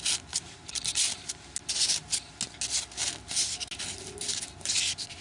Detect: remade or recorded recorded